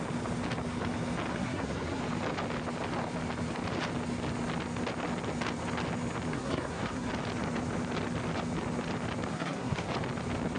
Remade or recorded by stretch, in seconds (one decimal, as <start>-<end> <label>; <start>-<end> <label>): 0.0-1.3 recorded; 1.3-2.0 remade; 2.0-6.3 recorded; 6.3-7.1 remade; 7.1-9.3 recorded; 9.3-9.9 remade; 9.9-10.6 recorded

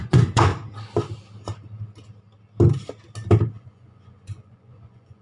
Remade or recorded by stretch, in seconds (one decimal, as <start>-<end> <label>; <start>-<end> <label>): 0.0-0.5 remade; 0.5-3.6 recorded; 3.6-5.2 remade

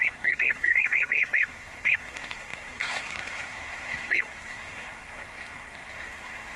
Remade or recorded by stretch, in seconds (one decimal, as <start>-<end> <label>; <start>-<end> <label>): 0.0-6.6 remade